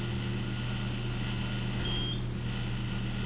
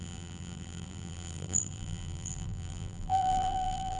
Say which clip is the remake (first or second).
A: second